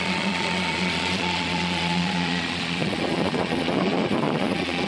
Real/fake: fake